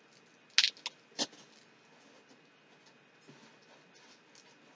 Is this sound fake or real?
real